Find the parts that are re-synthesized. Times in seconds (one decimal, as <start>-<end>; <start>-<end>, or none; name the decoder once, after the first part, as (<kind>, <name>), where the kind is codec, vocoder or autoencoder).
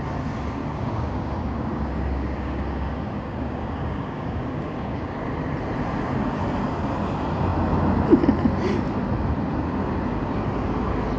0.6-5.3 (codec, DAC)